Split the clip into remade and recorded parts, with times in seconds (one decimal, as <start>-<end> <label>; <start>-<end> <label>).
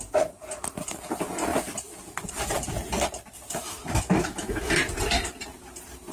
0.0-3.6 recorded; 3.6-4.7 remade; 4.7-6.1 recorded